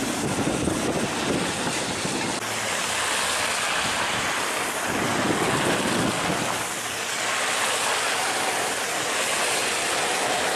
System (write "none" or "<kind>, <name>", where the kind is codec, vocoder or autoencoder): none